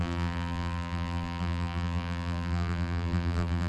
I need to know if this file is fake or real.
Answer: fake